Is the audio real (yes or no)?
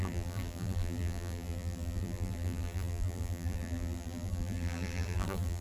no